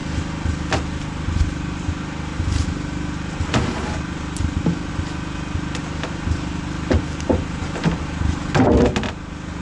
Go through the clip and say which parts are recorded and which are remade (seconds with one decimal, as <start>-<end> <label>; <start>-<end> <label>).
0.0-9.6 recorded